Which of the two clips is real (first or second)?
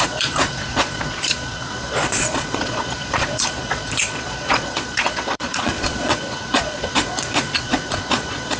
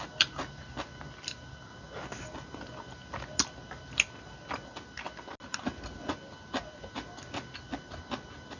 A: second